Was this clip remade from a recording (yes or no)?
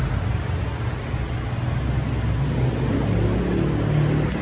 no